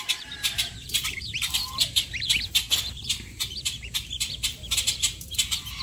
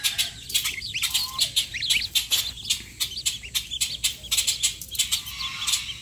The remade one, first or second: first